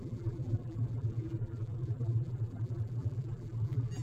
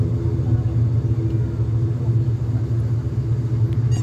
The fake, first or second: first